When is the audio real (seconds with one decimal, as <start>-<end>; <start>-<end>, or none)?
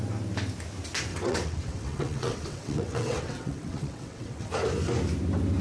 0.0-1.1; 4.5-5.6